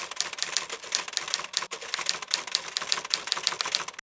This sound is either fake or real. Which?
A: real